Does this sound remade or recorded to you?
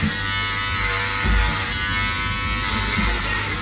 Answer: recorded